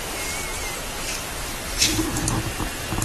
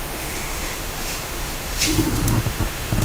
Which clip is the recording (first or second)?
first